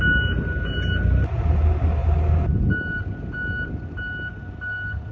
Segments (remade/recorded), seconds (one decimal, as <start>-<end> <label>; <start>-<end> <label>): 0.0-5.1 recorded